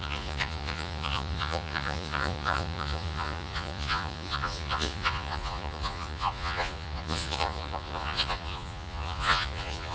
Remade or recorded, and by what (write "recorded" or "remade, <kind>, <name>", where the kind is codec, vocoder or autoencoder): remade, vocoder, Vocos